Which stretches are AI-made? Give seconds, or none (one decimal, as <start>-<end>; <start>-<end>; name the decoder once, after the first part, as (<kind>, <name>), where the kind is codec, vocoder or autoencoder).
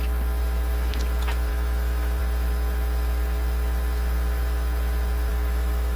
1.5-2.2 (autoencoder, DAC-VAE); 5.3-6.0